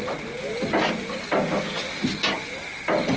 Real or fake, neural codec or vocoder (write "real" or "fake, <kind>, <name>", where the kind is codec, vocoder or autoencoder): real